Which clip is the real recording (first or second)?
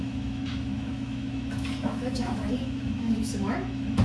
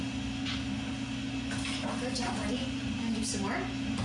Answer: second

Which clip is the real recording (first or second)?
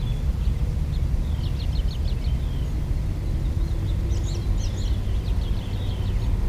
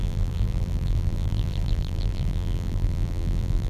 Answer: first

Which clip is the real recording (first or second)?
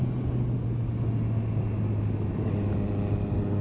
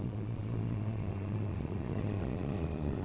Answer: first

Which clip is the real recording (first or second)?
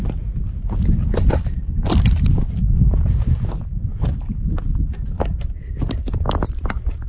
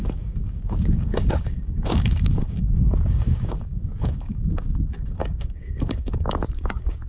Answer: first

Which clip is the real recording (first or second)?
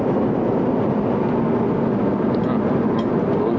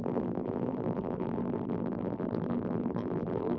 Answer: first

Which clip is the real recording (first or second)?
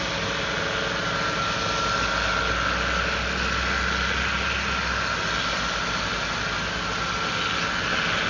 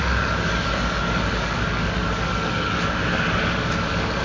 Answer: first